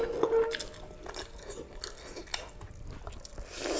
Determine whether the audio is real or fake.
real